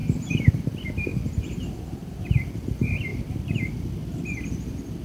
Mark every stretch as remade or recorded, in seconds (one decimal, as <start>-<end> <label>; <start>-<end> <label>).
0.0-0.5 remade; 0.5-1.1 recorded; 1.1-2.2 remade; 2.2-3.1 recorded; 3.1-3.7 remade; 3.7-5.0 recorded